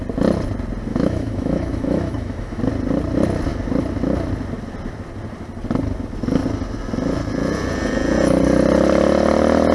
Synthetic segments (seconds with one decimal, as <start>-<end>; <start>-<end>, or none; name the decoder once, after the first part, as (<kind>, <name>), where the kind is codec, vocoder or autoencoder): 0.9-2.6 (autoencoder, DAC-VAE)